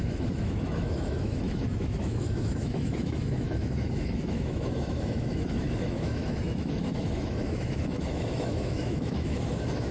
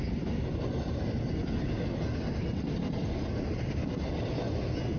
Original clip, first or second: second